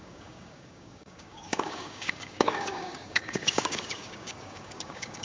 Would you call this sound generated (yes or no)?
yes